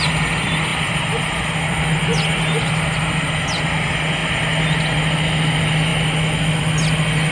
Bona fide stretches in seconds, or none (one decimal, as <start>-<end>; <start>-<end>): 0.0-7.3